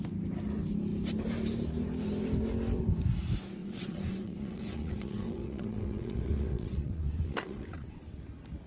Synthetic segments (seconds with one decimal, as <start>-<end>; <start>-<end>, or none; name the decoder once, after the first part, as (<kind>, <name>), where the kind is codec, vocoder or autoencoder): 3.6-8.2 (vocoder, WaveNeXt)

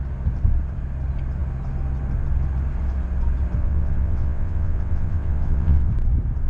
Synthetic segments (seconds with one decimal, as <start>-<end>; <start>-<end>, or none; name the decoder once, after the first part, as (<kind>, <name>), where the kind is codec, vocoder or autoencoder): 3.6-5.9 (vocoder, WaveNeXt)

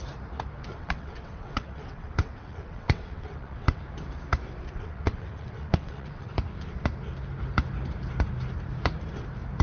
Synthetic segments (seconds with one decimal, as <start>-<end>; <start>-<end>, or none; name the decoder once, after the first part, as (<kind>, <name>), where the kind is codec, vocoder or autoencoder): 0.7-3.8 (vocoder, WaveNeXt); 4.6-6.3

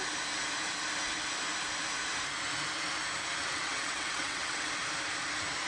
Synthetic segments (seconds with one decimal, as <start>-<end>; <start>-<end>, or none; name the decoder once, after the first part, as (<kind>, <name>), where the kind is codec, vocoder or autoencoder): 3.4-4.7 (vocoder, WaveNeXt)

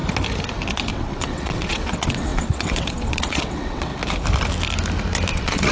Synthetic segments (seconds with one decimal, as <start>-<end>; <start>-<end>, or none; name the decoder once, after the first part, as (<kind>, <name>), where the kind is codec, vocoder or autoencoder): 0.9-3.9 (vocoder, WaveNeXt); 5.3-5.7

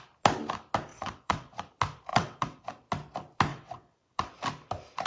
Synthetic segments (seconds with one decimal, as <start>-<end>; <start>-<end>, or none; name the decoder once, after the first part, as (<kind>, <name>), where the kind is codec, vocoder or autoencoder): 0.9-1.6 (vocoder, WaveNeXt); 2.1-2.7; 3.5-4.3